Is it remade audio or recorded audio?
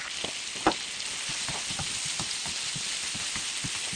recorded